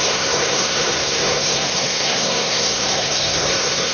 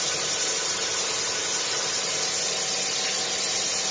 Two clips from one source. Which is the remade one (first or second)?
first